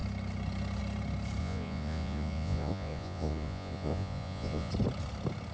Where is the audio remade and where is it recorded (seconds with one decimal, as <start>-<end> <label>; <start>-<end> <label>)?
0.0-1.4 recorded; 1.4-4.7 remade; 4.7-5.5 recorded